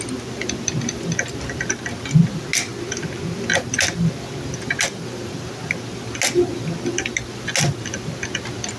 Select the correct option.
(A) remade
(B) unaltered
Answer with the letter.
B